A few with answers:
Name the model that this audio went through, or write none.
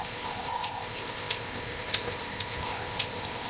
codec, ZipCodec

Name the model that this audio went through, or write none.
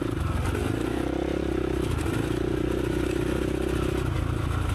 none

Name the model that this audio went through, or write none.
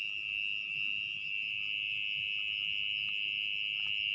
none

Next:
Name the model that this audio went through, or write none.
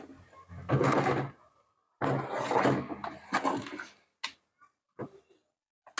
none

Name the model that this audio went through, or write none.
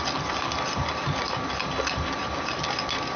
none